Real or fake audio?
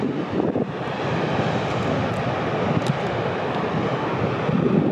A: real